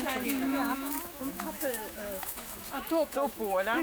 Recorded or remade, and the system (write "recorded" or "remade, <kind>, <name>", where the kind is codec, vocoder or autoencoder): remade, autoencoder, DAC-VAE